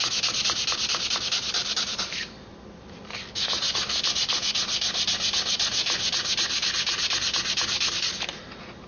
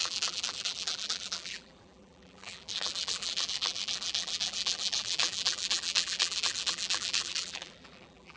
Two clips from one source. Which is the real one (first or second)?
first